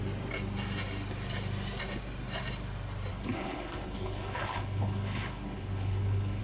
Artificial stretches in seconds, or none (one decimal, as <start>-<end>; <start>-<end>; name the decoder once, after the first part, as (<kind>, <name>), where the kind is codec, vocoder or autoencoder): 3.1-6.4 (codec, HILCodec)